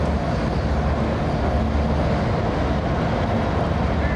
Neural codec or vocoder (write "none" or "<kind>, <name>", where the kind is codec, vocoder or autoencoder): none